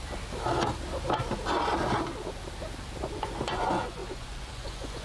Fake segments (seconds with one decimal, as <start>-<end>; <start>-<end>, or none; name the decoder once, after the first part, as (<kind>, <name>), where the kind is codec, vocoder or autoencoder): 3.0-5.0 (vocoder, Vocos)